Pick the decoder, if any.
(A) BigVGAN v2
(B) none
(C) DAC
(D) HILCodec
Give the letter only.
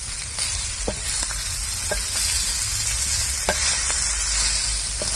B